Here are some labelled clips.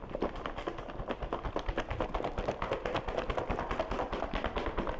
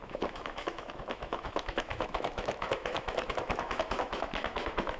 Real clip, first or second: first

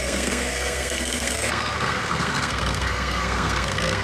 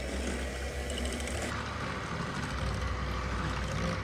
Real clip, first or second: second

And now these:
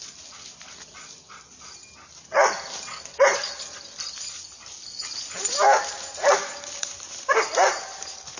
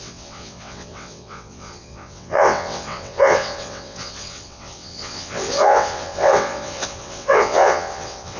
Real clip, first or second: first